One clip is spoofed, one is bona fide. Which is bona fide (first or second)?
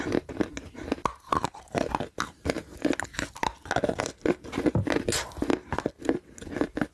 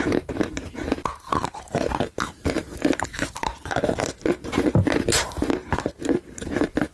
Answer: first